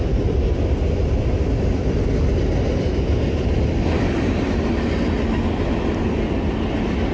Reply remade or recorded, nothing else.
recorded